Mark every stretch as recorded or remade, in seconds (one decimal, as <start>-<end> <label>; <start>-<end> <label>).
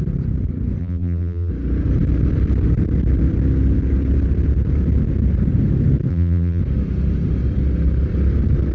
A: 0.0-0.8 recorded; 0.8-1.5 remade; 1.5-6.1 recorded; 6.1-6.6 remade; 6.6-8.7 recorded